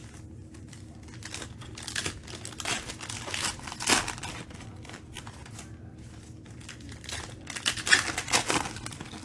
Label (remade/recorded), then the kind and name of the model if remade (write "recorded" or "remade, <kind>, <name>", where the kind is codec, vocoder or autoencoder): recorded